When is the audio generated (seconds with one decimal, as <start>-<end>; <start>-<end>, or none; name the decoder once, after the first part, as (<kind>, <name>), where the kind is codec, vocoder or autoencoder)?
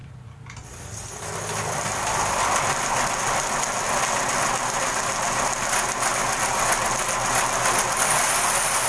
none